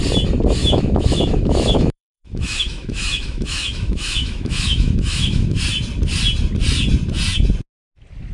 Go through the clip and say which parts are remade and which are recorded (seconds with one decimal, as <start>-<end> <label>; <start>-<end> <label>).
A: 0.0-0.6 recorded; 0.6-5.6 remade; 5.6-8.3 recorded